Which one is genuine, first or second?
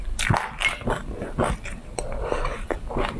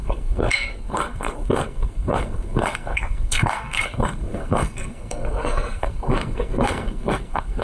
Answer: first